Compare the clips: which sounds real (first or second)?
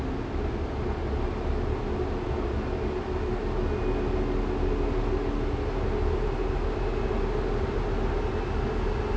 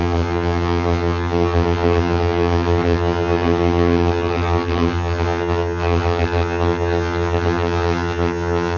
first